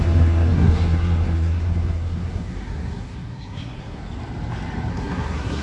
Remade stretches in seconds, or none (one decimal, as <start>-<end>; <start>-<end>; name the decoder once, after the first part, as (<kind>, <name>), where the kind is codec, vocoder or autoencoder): 0.0-4.0 (codec, SNAC); 4.9-5.6